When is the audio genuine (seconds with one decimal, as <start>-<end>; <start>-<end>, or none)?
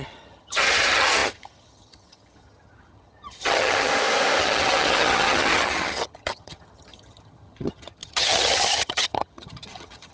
3.9-4.4